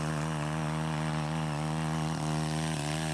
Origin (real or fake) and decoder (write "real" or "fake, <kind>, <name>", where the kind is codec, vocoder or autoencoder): real